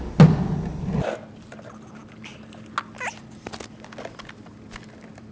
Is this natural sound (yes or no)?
yes